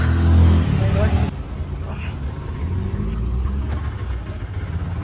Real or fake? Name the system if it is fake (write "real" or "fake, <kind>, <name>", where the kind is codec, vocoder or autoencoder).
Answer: real